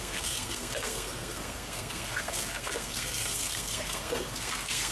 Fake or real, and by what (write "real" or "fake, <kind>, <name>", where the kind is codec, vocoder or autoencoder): fake, codec, SNAC